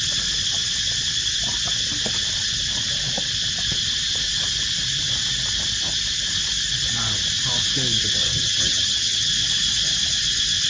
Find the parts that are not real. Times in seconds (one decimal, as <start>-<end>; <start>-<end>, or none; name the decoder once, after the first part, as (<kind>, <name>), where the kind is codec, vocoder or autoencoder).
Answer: 8.2-9.3 (vocoder, HiFi-GAN)